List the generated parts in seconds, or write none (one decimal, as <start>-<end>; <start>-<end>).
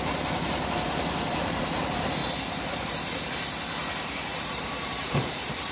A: 0.0-2.2; 4.4-5.7